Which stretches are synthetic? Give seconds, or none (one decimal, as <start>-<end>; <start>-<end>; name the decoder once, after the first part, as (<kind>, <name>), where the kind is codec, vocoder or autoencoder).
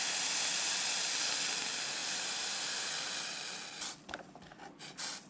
2.0-5.3 (vocoder, BigVGAN v2)